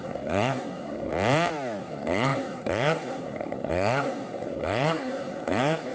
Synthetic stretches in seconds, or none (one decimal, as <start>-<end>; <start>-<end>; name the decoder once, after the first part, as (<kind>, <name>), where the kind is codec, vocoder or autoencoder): 0.0-1.1 (codec, SNAC); 1.8-5.9